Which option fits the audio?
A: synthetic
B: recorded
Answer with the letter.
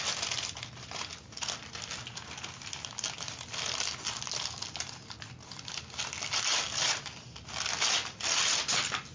B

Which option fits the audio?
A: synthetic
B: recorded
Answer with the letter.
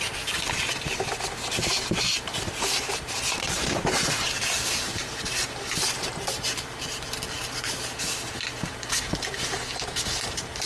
A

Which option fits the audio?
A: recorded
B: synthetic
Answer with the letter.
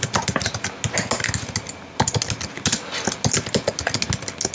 A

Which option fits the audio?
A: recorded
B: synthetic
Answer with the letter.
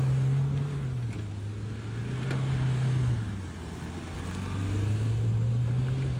A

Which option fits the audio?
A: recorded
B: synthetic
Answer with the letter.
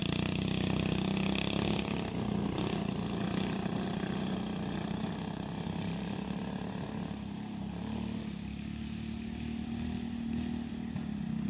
A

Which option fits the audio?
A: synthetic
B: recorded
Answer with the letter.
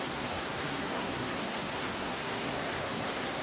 A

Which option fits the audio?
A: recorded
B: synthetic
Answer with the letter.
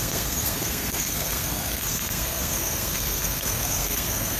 B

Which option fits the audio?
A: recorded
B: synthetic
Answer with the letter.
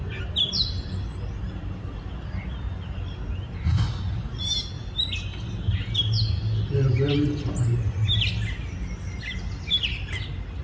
A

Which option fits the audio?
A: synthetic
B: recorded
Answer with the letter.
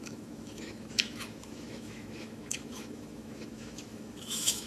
A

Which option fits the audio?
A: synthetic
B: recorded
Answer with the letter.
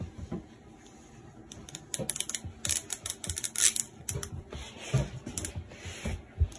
B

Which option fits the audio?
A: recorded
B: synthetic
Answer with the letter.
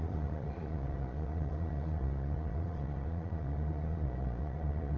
B